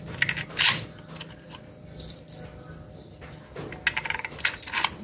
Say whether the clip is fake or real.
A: real